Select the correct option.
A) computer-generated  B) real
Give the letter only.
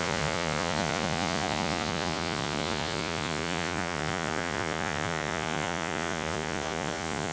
A